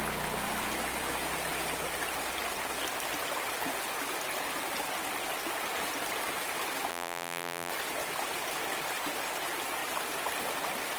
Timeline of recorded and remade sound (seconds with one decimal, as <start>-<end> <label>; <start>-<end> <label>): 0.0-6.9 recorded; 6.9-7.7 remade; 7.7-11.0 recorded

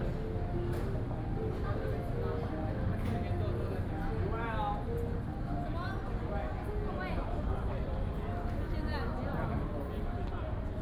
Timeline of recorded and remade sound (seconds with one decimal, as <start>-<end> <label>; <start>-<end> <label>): 0.0-1.4 recorded; 1.4-1.9 remade; 1.9-7.2 recorded; 7.2-8.2 remade; 8.2-8.9 recorded; 8.9-10.8 remade

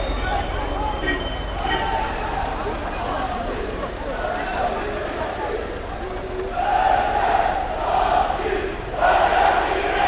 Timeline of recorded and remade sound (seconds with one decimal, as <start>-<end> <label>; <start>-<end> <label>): 0.0-10.1 remade

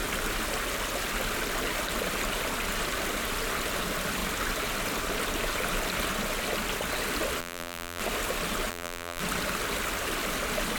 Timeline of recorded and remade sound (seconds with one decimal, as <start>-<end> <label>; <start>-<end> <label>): 0.0-7.4 recorded; 7.4-8.0 remade; 8.0-8.7 recorded; 8.7-9.2 remade; 9.2-10.8 recorded

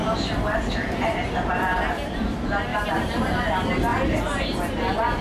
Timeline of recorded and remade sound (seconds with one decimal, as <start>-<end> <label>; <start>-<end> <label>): 0.0-1.5 remade; 1.5-2.7 recorded; 2.7-3.4 remade; 3.4-5.2 recorded

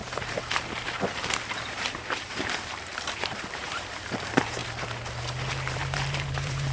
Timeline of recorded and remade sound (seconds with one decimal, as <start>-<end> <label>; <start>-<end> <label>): 0.0-4.6 remade; 4.6-5.5 recorded; 5.5-6.7 remade